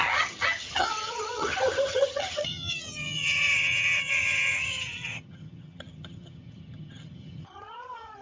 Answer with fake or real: fake